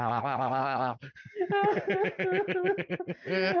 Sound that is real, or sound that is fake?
real